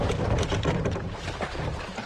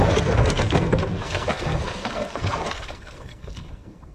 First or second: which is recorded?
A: first